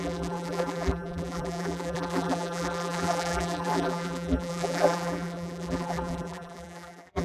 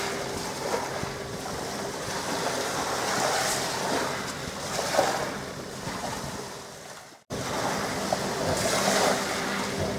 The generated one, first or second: first